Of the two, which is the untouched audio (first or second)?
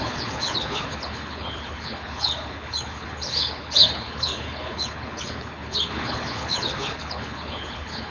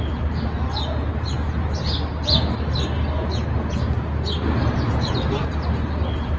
second